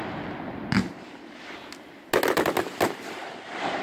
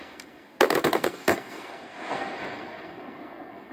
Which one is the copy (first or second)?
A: second